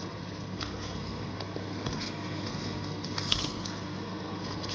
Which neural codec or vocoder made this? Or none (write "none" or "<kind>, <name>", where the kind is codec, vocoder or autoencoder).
codec, SNAC